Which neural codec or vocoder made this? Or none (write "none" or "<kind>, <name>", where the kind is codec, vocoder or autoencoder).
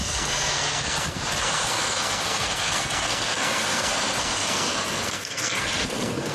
codec, SNAC